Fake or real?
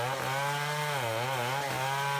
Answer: real